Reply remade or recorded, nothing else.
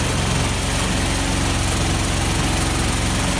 recorded